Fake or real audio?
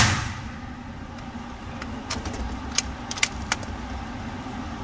real